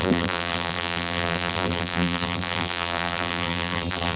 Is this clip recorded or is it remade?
remade